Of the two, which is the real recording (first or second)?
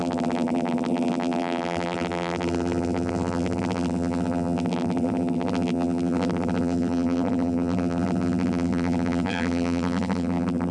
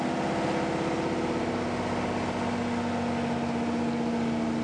second